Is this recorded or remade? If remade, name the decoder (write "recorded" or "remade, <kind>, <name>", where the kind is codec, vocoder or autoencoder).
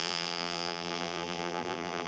remade, vocoder, BigVGAN v2